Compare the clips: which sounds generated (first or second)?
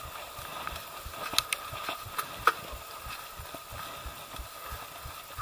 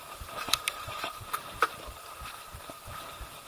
second